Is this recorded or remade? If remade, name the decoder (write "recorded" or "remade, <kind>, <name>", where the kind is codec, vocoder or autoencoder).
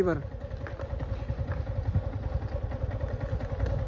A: recorded